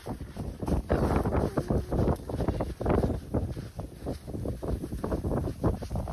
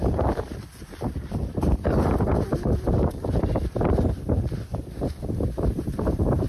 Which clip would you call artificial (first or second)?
second